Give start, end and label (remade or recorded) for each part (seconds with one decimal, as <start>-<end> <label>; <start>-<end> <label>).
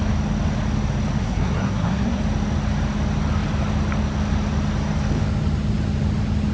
0.0-1.2 recorded; 1.2-2.2 remade; 2.2-6.5 recorded